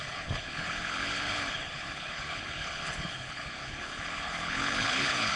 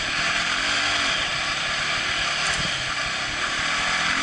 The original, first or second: second